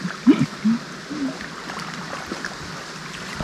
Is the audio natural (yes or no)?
yes